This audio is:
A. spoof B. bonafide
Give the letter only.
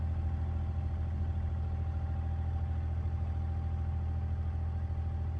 B